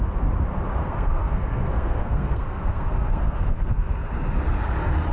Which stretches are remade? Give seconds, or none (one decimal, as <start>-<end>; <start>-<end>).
0.8-3.9